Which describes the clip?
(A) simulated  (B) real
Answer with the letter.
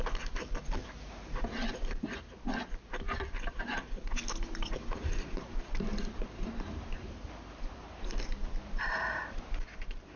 A